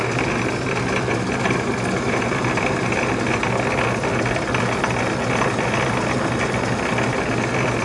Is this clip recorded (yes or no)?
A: yes